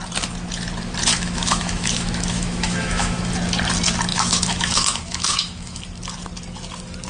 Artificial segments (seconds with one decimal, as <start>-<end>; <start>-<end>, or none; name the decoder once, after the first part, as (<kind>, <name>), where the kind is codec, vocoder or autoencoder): 1.1-3.3 (autoencoder, DAC-VAE); 4.1-5.8